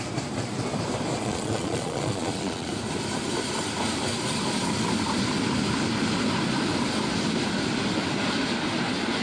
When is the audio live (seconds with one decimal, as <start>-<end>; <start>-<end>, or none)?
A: 0.0-1.2; 2.7-9.2